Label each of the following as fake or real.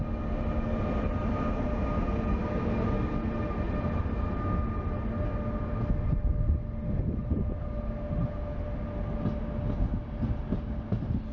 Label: real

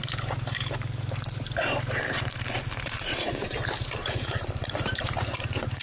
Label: fake